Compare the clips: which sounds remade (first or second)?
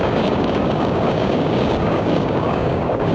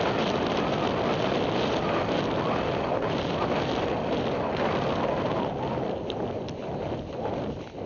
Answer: first